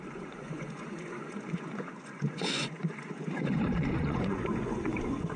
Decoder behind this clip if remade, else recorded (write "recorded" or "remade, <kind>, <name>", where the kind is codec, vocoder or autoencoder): remade, vocoder, Vocos